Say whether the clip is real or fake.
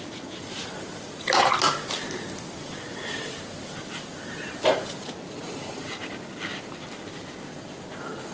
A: real